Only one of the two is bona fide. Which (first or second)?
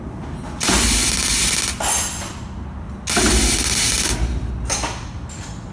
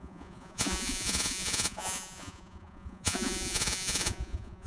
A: first